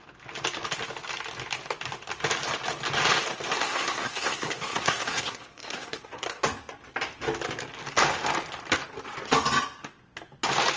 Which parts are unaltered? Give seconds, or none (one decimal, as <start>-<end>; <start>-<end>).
0.0-3.6; 6.4-10.8